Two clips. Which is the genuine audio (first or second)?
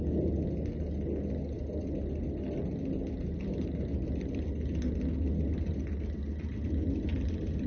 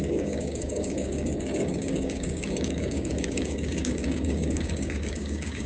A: first